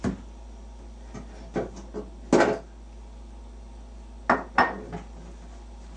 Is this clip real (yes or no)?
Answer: yes